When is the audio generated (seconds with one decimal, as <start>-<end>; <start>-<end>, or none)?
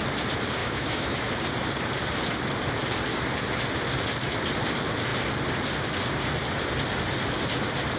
0.6-1.3